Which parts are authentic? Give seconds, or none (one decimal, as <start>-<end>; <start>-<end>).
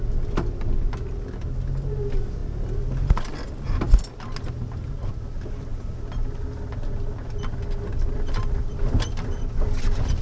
0.0-10.2